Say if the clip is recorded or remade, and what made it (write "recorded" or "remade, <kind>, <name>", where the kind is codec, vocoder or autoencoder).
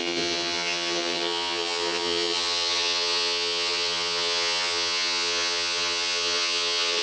remade, vocoder, HiFi-GAN